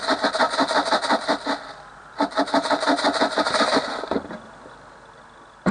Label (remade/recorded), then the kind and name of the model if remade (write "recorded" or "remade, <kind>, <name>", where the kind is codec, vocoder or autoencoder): recorded